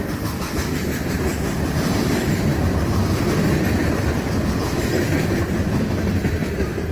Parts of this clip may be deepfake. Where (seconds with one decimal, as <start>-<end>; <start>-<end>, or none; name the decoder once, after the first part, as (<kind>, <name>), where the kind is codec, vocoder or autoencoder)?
0.0-6.9 (vocoder, BigVGAN v2)